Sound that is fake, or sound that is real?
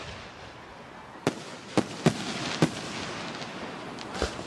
real